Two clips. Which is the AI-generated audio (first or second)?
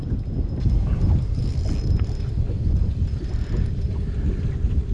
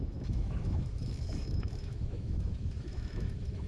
second